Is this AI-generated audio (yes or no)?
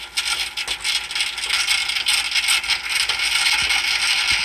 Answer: no